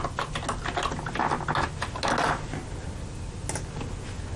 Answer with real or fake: real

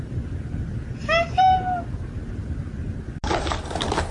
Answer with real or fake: real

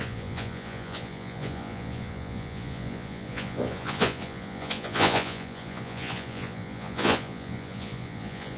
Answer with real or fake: fake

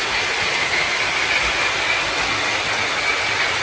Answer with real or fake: real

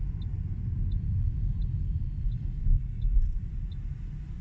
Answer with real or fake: real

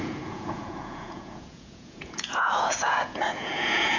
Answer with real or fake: fake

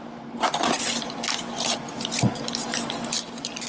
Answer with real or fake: real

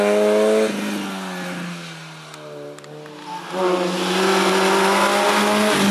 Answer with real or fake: real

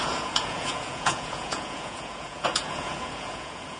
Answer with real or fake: fake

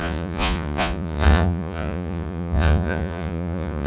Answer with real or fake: fake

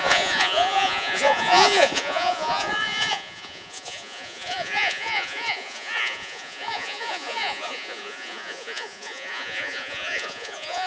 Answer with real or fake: fake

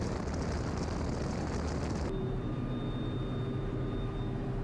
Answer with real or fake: real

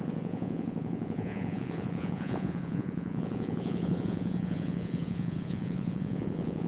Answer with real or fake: fake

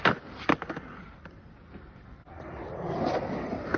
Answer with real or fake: real